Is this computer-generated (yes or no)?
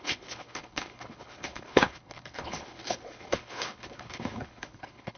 yes